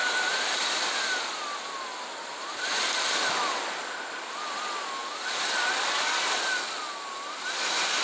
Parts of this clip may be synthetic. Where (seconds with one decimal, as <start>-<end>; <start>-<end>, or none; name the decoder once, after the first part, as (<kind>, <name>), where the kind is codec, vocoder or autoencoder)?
5.0-6.6 (vocoder, BigVGAN v2)